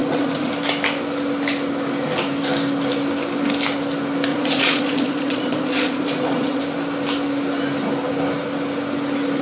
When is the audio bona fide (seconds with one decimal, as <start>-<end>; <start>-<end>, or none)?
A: 0.5-4.3; 6.6-9.4